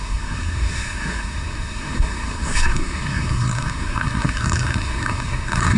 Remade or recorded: remade